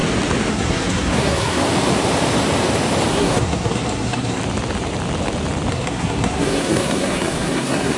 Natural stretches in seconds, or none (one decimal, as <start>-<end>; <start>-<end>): 0.0-0.5; 1.6-3.1; 4.4-5.7